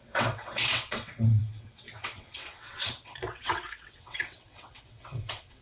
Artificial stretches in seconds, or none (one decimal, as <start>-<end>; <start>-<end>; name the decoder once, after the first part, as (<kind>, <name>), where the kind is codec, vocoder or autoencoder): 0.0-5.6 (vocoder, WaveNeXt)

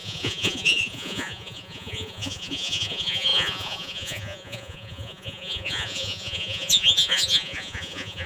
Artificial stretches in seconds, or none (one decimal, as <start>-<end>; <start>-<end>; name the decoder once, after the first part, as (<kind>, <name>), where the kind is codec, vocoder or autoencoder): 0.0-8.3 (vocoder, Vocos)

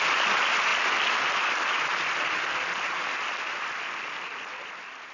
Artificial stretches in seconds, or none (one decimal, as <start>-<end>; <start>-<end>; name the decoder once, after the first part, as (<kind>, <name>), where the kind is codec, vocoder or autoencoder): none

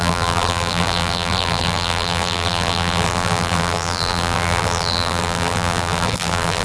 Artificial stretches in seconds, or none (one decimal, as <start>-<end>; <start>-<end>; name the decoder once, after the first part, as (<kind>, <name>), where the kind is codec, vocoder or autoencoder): 0.0-6.6 (vocoder, BigVGAN v2)